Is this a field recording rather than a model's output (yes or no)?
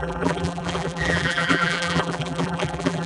no